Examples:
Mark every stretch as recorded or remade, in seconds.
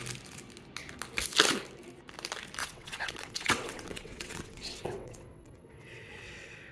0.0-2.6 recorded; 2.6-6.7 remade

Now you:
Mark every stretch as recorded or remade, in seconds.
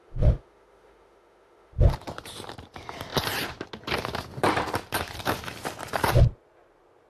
0.0-1.8 remade; 1.8-7.1 recorded